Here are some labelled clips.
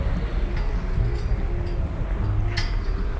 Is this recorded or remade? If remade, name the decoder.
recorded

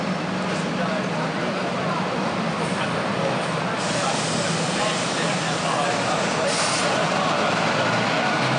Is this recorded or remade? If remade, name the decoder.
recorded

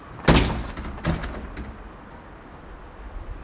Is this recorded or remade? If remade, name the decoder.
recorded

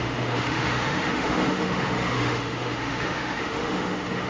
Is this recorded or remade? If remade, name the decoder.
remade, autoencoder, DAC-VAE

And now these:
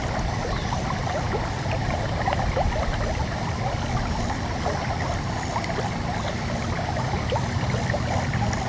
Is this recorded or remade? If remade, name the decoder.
recorded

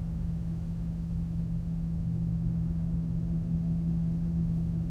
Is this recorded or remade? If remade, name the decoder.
remade, autoencoder, DAC-VAE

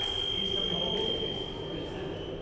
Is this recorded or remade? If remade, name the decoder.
recorded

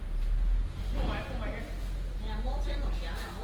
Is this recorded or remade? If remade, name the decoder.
recorded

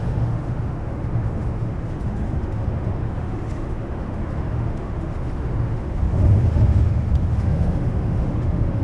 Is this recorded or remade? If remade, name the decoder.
remade, autoencoder, DAC-VAE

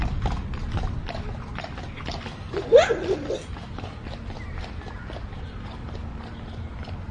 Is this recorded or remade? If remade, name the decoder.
recorded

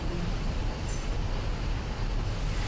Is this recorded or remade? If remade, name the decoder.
recorded